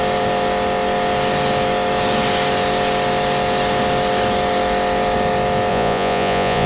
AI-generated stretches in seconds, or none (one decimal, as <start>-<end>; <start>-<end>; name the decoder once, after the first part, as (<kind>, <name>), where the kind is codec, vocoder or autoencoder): 5.7-6.7 (vocoder, Vocos)